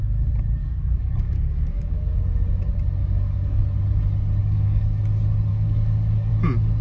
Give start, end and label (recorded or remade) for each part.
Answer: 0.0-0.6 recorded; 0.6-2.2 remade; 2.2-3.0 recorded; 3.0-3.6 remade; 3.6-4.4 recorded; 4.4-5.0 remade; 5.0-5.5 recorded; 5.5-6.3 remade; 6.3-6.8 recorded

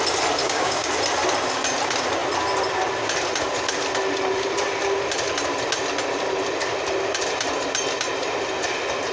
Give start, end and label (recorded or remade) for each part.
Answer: 0.0-0.4 recorded; 0.4-0.9 remade; 0.9-9.1 recorded